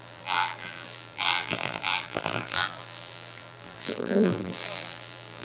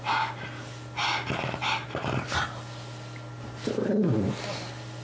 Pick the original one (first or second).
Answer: second